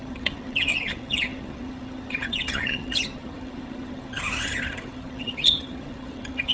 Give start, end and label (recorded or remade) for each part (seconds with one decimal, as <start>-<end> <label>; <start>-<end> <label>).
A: 0.0-6.5 remade